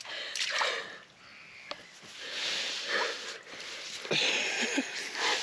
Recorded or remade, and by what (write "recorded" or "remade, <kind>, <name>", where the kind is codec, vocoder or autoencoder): recorded